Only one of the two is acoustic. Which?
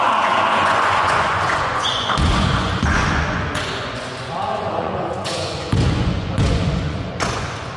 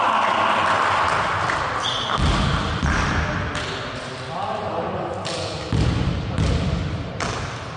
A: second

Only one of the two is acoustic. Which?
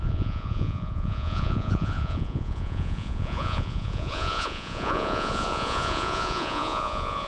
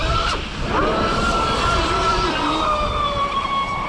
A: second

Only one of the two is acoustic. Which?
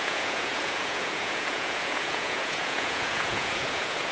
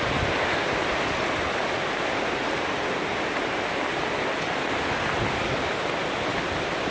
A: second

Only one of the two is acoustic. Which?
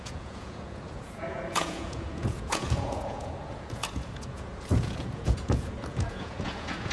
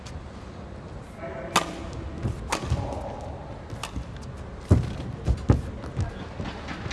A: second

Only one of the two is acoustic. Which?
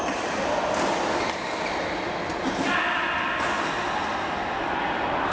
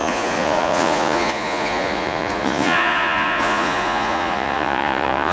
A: first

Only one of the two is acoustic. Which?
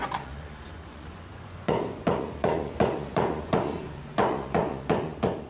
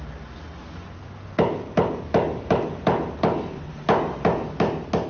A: second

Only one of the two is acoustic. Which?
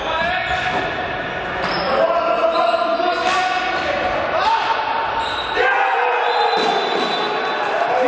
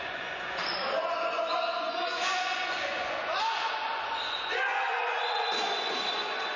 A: first